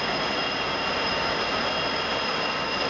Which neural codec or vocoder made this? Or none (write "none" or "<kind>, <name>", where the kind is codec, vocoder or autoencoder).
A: none